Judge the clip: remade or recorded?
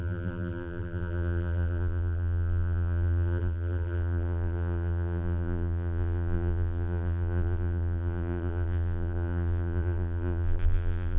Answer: remade